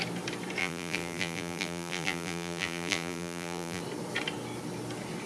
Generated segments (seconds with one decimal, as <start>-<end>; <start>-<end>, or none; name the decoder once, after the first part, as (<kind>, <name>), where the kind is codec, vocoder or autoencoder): 0.6-3.8 (vocoder, BigVGAN v2)